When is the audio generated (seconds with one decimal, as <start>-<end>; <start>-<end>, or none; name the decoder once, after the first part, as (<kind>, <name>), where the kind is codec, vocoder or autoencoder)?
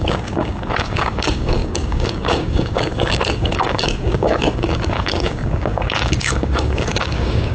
0.0-7.5 (codec, DAC)